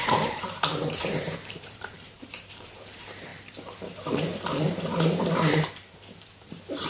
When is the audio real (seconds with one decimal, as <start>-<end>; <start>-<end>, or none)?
none